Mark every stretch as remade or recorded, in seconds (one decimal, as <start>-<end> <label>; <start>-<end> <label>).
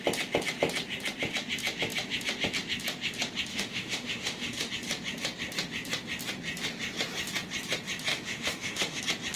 0.0-3.5 recorded; 3.5-4.7 remade; 4.7-8.1 recorded; 8.1-9.0 remade; 9.0-9.4 recorded